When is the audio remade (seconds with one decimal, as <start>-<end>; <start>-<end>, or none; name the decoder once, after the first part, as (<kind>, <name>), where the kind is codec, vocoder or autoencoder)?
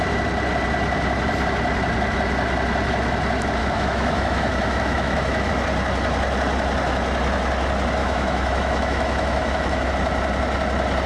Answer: 3.6-5.5 (autoencoder, DAC-VAE); 8.0-9.9